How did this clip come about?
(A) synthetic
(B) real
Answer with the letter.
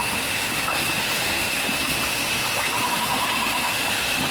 A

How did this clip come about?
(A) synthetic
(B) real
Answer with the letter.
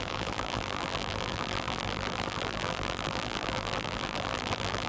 A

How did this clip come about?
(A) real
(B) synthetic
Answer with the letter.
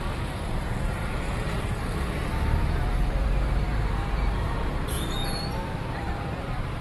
B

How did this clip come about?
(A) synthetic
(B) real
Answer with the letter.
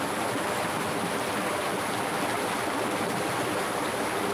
B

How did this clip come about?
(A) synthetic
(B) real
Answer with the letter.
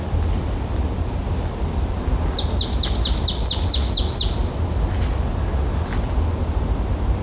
B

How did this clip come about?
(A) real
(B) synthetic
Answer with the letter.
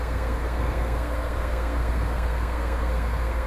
B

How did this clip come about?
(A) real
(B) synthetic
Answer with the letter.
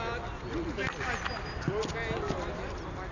A